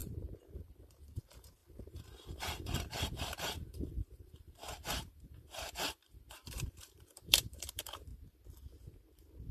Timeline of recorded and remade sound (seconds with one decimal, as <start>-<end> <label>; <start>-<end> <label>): 0.0-8.1 remade; 8.1-9.5 recorded